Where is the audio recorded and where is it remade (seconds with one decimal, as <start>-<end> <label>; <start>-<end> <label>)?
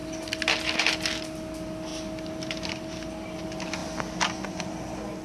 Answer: 0.0-0.5 remade; 0.5-1.9 recorded; 1.9-3.4 remade; 3.4-3.8 recorded; 3.8-4.6 remade; 4.6-5.2 recorded